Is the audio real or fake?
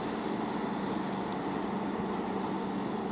real